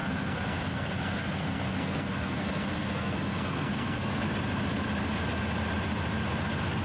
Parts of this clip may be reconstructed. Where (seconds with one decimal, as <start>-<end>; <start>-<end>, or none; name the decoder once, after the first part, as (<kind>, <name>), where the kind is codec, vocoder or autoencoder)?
0.0-4.1 (codec, SNAC)